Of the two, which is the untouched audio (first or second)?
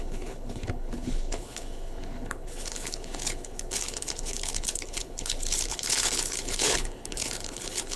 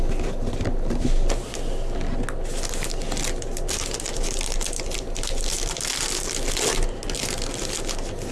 second